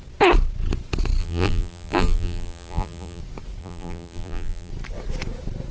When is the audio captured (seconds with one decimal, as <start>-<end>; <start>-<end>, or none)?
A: 0.0-1.2; 3.2-3.6; 4.7-5.7